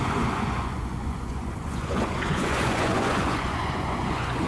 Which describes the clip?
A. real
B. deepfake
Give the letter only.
B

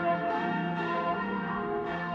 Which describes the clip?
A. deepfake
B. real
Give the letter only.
A